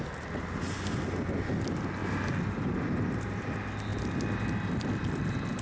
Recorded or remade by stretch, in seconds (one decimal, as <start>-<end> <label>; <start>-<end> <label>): 0.0-2.0 recorded; 2.0-3.5 remade; 3.5-5.6 recorded